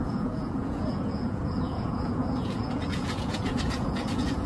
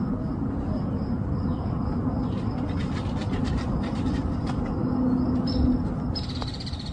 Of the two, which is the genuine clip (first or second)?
second